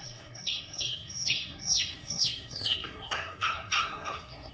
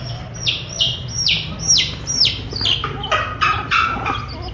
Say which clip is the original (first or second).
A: second